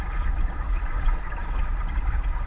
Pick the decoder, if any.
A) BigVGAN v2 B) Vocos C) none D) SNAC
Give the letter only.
A